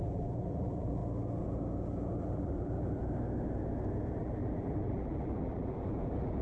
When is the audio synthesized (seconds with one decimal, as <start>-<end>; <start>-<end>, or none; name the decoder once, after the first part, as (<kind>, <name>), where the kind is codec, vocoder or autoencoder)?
0.0-1.0 (vocoder, BigVGAN v2); 2.2-3.0; 4.2-6.4